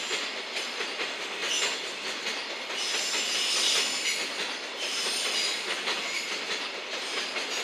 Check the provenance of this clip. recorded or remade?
recorded